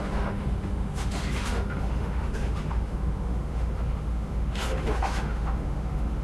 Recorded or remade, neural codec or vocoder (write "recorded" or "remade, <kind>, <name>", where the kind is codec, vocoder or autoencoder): remade, autoencoder, DAC-VAE